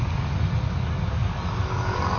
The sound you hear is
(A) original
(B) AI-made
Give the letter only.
A